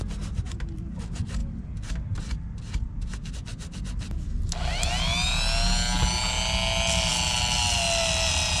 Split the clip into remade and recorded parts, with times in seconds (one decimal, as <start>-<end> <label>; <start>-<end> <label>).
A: 0.0-8.6 recorded